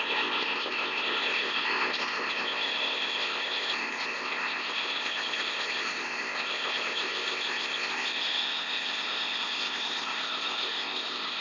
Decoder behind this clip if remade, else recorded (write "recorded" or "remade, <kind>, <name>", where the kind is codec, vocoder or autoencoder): remade, codec, ZipCodec